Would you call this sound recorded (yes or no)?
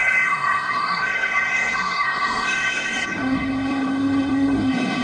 no